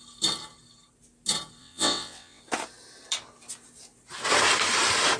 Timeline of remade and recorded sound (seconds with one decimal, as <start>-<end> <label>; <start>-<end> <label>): 0.0-1.6 recorded; 1.6-2.4 remade; 2.4-5.2 recorded